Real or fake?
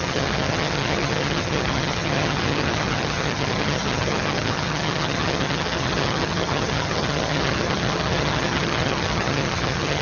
fake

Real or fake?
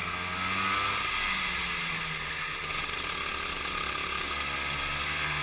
real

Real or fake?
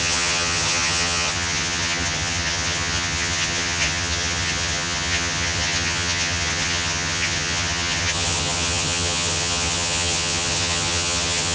fake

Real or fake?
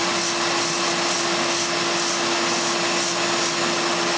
real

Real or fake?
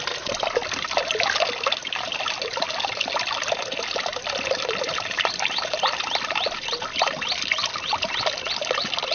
real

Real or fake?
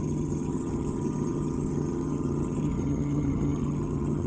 fake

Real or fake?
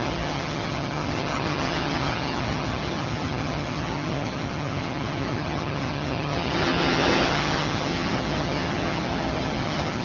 fake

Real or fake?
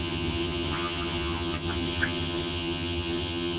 fake